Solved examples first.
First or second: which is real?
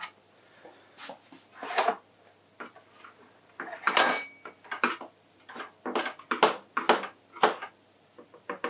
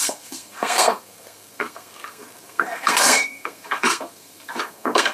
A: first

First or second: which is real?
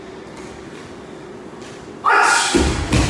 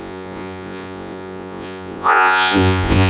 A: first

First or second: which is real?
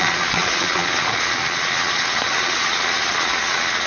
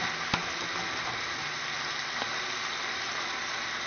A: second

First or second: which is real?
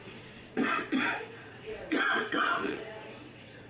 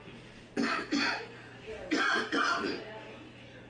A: second